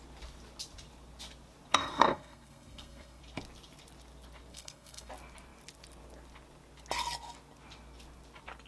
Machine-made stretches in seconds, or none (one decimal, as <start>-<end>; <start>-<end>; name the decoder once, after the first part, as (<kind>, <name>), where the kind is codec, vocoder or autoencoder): 1.7-3.2 (codec, SNAC); 4.5-5.1